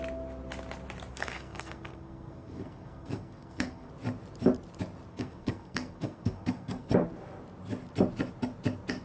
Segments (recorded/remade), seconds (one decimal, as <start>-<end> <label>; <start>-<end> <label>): 0.0-1.1 recorded; 1.1-3.9 remade; 3.9-5.1 recorded; 5.1-6.9 remade; 6.9-9.0 recorded